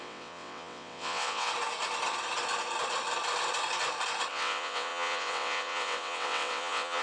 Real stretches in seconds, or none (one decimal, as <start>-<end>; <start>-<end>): 1.5-4.3